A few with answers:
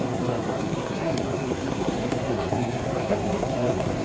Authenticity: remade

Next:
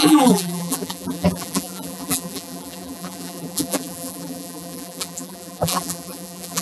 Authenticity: remade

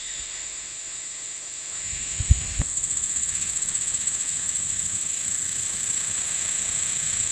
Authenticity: remade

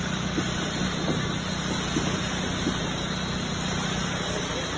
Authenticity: recorded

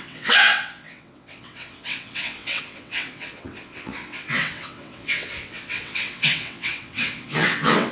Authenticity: remade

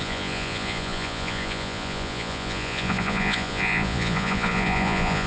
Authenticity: remade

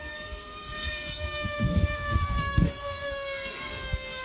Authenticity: remade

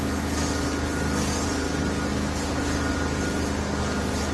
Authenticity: recorded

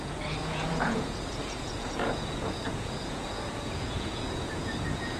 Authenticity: remade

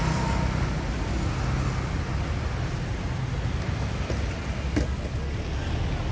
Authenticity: recorded